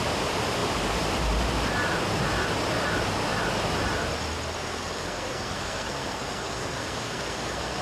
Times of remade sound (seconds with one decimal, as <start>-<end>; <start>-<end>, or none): 4.6-7.8